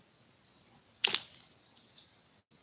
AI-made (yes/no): no